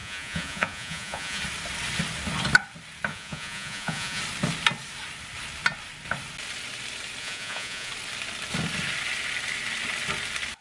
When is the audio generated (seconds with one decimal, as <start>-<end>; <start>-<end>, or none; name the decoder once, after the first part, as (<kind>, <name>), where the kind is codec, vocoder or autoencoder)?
0.0-1.4 (vocoder, Vocos); 3.1-4.2; 7.2-7.9